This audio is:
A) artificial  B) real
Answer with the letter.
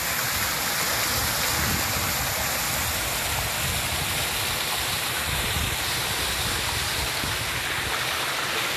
B